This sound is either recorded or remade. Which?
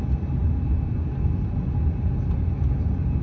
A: recorded